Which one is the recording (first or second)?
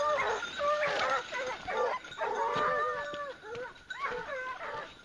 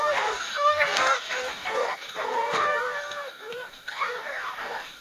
first